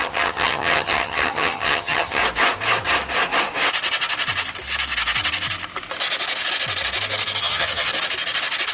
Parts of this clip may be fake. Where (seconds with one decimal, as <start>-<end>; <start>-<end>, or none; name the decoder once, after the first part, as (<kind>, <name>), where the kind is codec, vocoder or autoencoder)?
0.0-2.2 (vocoder, HiFi-GAN); 7.4-7.9